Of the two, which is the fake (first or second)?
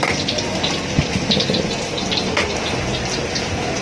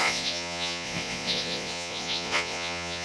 second